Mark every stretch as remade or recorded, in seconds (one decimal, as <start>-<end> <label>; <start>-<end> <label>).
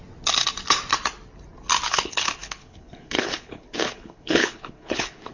0.0-1.9 recorded; 1.9-5.3 remade